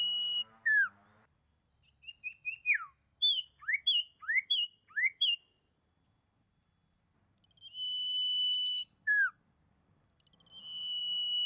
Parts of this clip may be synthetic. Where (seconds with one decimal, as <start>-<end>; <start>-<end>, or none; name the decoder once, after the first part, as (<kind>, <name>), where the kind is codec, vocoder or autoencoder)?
none